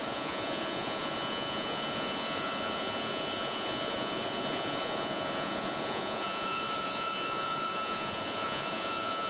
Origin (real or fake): fake